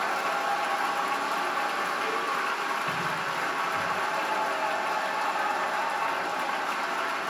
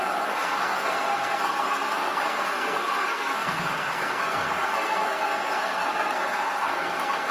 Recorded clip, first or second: first